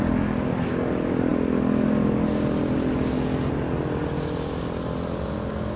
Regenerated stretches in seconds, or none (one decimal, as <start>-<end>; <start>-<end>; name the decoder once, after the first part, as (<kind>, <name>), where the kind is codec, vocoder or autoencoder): none